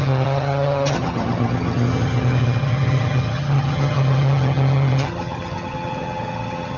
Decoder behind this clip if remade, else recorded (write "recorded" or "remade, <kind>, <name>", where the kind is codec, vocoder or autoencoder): remade, vocoder, HiFi-GAN